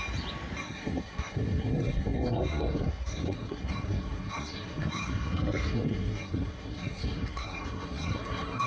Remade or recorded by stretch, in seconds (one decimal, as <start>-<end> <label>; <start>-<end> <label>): 0.0-0.6 recorded; 0.6-8.7 remade